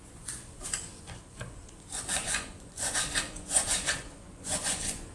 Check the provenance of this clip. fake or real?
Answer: fake